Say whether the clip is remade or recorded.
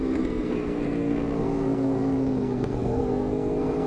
remade